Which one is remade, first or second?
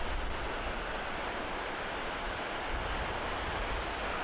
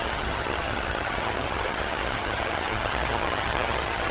second